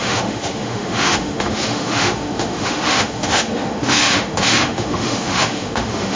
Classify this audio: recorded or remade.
remade